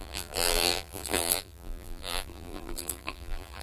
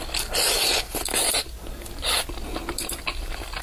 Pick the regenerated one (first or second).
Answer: first